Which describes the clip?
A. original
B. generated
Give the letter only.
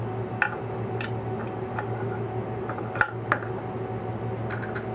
A